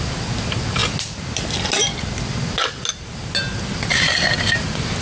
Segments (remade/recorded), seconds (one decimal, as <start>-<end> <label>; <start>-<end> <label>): 0.0-5.0 recorded